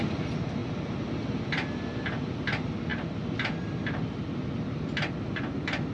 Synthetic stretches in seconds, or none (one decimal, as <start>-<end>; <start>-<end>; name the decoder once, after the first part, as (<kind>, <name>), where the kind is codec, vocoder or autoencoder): none

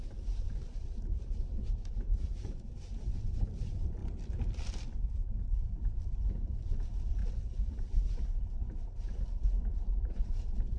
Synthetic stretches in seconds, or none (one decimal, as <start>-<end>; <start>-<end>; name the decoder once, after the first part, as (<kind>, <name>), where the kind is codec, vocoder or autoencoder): 0.0-4.0 (vocoder, BigVGAN v2); 5.1-7.2; 7.8-10.8